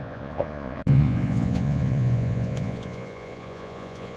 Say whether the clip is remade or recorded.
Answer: remade